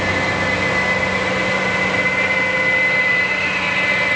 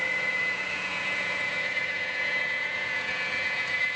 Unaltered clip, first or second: first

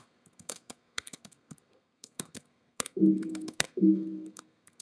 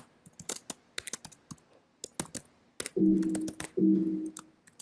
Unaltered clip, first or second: second